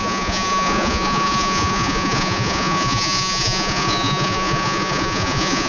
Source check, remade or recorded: remade